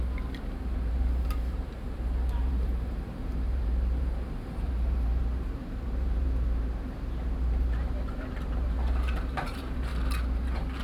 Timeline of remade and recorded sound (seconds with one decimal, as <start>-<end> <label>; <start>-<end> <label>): 0.0-9.9 remade; 9.9-10.4 recorded; 10.4-10.8 remade